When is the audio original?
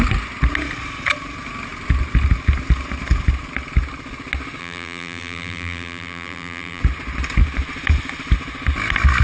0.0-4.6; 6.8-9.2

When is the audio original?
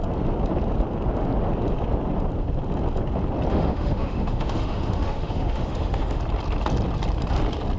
0.0-3.5; 6.2-7.8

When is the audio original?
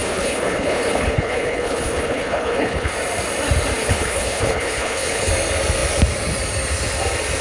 2.9-3.8; 5.3-7.4